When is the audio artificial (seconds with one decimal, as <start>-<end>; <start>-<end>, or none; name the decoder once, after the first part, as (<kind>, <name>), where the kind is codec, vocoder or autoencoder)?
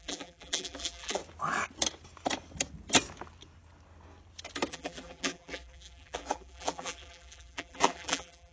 0.0-1.2 (vocoder, BigVGAN v2); 4.7-8.5